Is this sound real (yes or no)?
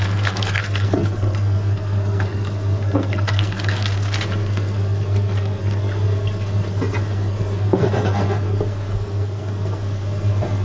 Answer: no